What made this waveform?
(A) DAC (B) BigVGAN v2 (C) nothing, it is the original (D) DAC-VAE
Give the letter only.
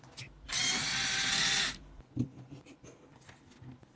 C